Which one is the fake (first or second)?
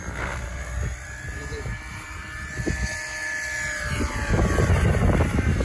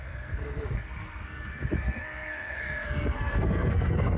second